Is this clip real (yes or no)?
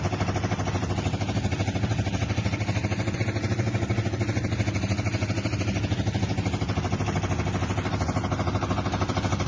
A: yes